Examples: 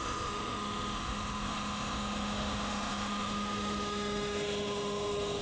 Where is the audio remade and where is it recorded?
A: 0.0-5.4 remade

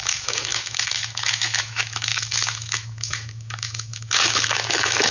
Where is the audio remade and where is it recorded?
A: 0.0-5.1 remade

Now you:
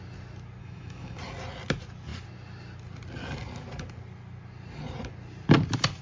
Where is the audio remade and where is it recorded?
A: 0.0-0.6 recorded; 0.6-1.2 remade; 1.2-6.0 recorded

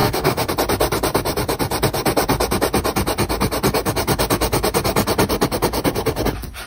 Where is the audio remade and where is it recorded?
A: 0.0-0.5 remade; 0.5-6.7 recorded

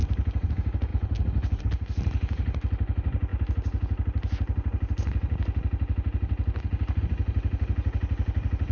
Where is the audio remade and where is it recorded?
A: 0.0-8.7 recorded

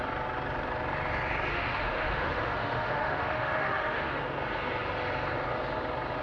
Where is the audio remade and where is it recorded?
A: 0.0-1.5 recorded; 1.5-4.2 remade; 4.2-6.2 recorded